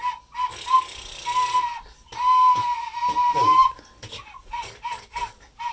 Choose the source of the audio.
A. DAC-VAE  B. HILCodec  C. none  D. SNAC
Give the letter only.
C